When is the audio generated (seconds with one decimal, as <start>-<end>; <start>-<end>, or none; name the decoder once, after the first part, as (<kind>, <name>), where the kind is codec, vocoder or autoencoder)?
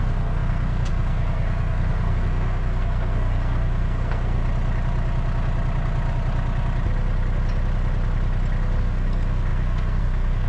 0.0-4.4 (codec, SNAC); 8.8-10.5